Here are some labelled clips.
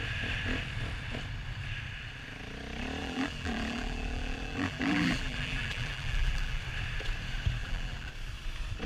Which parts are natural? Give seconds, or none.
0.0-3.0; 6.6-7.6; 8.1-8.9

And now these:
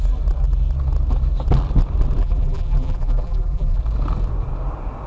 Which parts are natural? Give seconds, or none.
0.0-2.2; 3.8-5.1

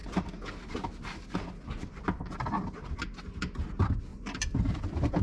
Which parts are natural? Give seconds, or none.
2.0-4.1

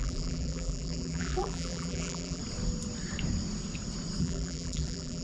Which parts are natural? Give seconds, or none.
2.4-4.2

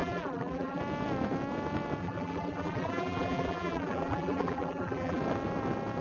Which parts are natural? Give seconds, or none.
0.8-2.0; 5.2-6.0

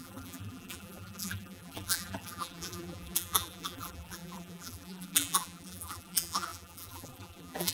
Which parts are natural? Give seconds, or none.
none

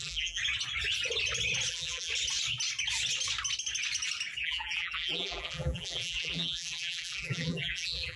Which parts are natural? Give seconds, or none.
0.4-1.7; 2.1-4.4

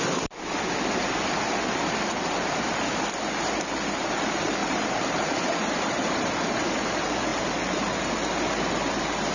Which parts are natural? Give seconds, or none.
0.0-4.6; 6.3-9.3